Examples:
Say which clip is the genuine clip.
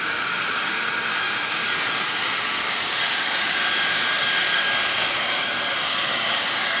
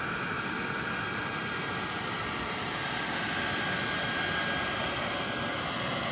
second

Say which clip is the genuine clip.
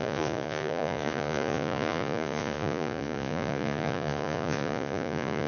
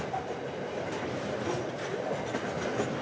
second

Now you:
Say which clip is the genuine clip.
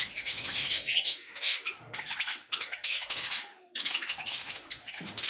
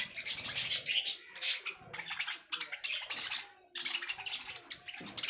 second